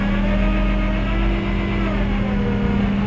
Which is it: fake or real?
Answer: real